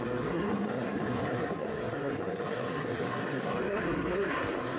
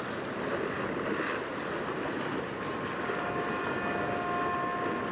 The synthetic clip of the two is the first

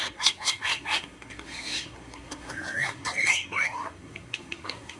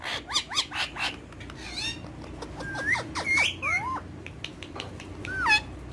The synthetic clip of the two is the first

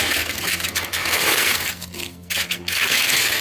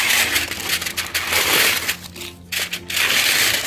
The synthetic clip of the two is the first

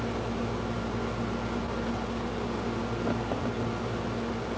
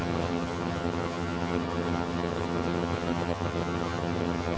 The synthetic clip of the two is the second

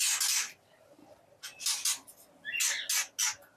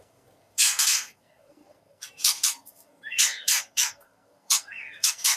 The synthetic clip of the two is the second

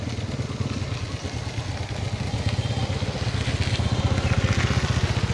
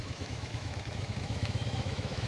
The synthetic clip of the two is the second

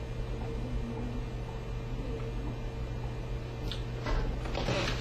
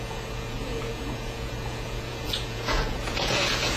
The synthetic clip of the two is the second